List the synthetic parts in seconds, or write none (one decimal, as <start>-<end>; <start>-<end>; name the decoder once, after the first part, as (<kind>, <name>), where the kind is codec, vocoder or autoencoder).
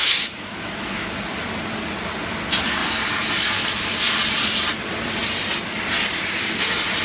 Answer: 0.0-1.1 (autoencoder, DAC-VAE)